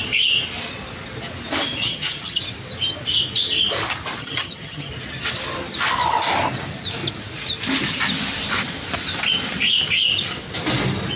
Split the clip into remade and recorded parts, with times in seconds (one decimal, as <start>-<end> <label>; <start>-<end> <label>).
0.0-1.8 recorded; 1.8-2.4 remade; 2.4-4.2 recorded; 4.2-4.9 remade; 4.9-11.2 recorded